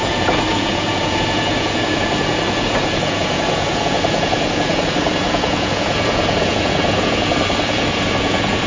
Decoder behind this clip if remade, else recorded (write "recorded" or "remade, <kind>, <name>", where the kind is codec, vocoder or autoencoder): remade, vocoder, Vocos